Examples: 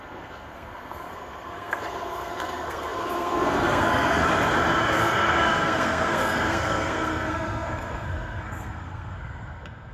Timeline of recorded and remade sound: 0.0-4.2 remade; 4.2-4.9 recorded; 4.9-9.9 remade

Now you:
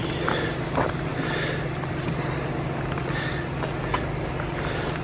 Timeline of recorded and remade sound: 0.0-5.0 recorded

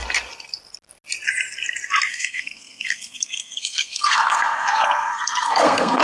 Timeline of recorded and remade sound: 0.0-2.1 recorded; 2.1-6.0 remade

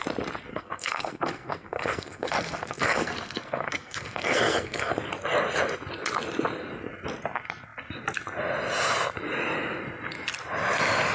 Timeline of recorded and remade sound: 0.0-0.5 recorded; 0.5-4.9 remade; 4.9-11.1 recorded

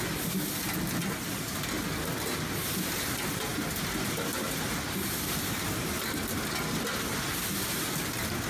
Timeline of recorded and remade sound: 0.0-8.5 recorded

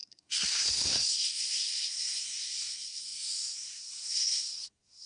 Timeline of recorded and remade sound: 0.0-5.1 remade